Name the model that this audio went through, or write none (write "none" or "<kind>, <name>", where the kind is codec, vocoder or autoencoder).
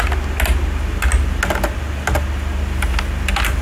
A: none